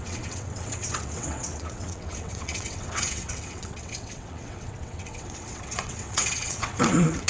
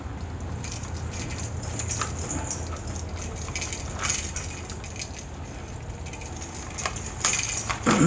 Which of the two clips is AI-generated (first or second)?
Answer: first